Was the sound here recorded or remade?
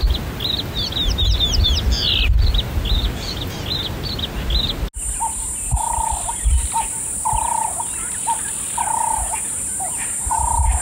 recorded